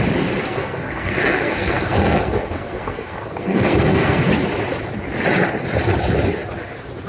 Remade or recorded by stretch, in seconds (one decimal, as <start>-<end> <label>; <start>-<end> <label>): 0.0-0.4 recorded; 0.4-4.3 remade; 4.3-7.1 recorded